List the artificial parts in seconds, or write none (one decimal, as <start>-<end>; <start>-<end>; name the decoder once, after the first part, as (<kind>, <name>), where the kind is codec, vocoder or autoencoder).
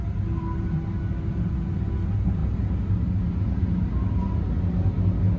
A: none